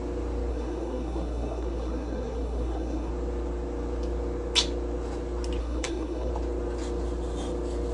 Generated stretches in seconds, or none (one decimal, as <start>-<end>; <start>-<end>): 0.5-3.1; 5.6-6.3